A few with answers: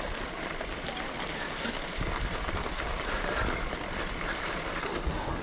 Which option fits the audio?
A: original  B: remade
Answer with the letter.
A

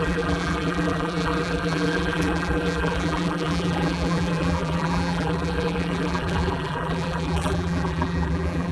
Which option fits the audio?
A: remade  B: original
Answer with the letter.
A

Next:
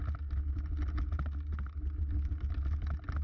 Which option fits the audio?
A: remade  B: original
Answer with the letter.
B